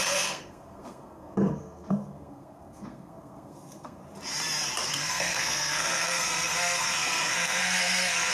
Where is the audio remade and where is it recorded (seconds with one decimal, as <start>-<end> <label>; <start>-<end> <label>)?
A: 0.0-4.0 remade; 4.0-4.9 recorded; 4.9-8.3 remade

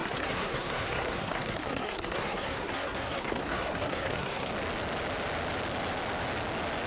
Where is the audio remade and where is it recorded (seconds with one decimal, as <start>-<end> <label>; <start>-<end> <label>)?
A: 0.0-4.5 remade; 4.5-6.9 recorded

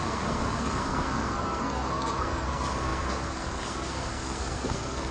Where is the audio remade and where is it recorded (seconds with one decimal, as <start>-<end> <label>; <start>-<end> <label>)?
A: 0.0-5.1 remade

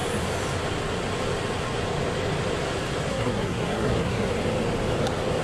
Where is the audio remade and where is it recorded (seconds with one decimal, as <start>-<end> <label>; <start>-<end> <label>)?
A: 0.0-3.1 recorded; 3.1-4.3 remade; 4.3-5.4 recorded

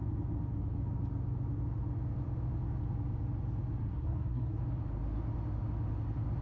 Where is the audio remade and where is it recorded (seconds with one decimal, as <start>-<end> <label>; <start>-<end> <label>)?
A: 0.0-3.8 recorded; 3.8-4.6 remade; 4.6-6.4 recorded

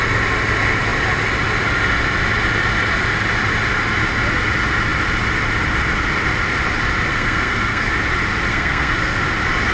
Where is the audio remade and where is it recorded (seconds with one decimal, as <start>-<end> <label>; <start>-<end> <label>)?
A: 0.0-7.1 recorded; 7.1-7.9 remade; 7.9-8.5 recorded; 8.5-9.2 remade; 9.2-9.7 recorded